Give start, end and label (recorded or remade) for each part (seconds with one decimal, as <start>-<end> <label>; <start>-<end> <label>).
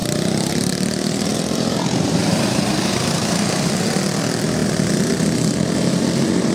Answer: 0.0-0.7 remade; 0.7-1.3 recorded; 1.3-3.4 remade; 3.4-6.5 recorded